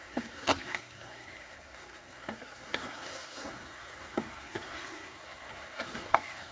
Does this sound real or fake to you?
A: fake